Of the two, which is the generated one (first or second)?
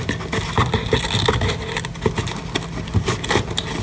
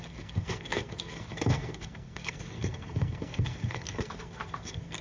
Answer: second